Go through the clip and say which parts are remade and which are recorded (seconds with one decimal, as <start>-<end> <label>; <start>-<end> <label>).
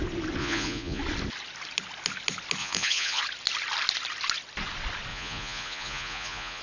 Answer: 0.0-0.4 recorded; 0.4-1.0 remade; 1.0-2.6 recorded; 2.6-3.2 remade; 3.2-5.1 recorded; 5.1-6.6 remade